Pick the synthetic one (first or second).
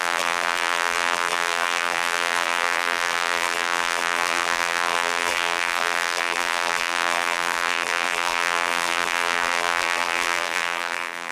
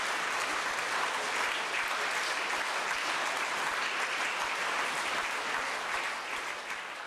first